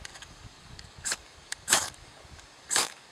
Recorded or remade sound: remade